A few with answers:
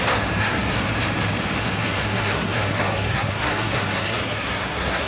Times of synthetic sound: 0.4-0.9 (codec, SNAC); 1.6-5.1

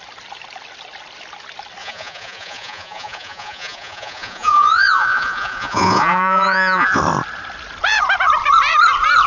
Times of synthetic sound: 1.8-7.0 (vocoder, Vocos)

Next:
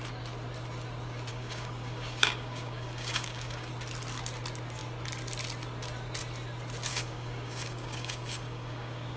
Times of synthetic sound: 1.3-3.7 (codec, DAC); 6.9-9.2

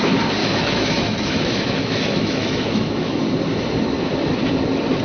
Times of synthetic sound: 0.4-3.2 (autoencoder, DAC-VAE)